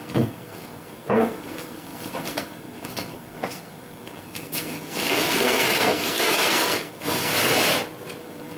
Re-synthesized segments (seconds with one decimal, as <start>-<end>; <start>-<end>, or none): 0.0-7.3; 8.2-8.6